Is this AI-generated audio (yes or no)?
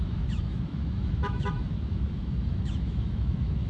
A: yes